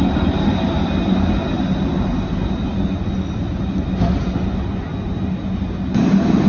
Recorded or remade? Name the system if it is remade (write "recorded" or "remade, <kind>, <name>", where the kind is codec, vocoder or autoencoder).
recorded